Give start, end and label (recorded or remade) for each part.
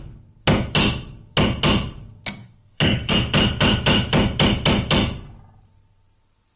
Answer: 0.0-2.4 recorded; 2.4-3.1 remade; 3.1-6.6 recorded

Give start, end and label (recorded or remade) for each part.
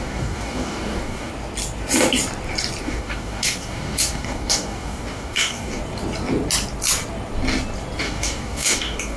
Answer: 0.0-1.3 remade; 1.3-2.8 recorded; 2.8-5.8 remade; 5.8-8.0 recorded; 8.0-9.2 remade